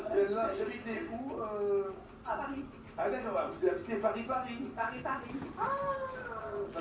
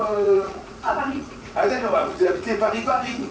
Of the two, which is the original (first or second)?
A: first